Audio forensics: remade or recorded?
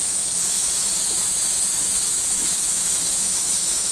remade